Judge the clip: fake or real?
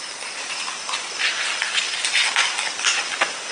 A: real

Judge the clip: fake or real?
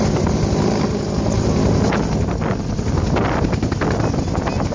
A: real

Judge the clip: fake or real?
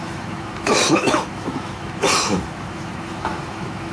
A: fake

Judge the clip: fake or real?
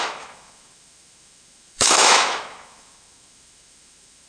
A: fake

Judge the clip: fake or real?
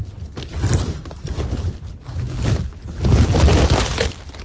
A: real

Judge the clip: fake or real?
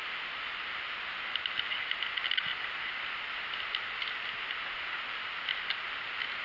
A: real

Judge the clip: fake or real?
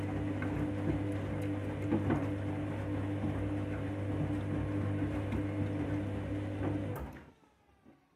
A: real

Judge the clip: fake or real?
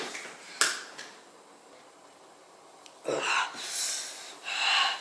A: real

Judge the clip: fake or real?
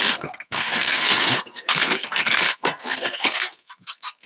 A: fake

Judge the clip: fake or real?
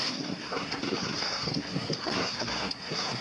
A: fake